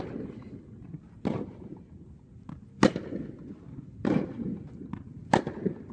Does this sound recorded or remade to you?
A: recorded